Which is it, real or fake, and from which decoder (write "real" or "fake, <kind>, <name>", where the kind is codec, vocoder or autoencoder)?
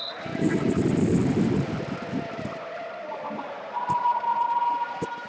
real